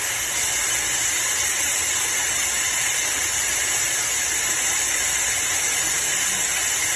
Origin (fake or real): real